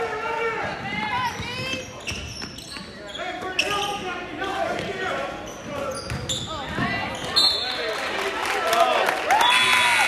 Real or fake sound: real